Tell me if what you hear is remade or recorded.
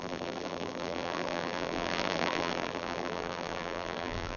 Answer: remade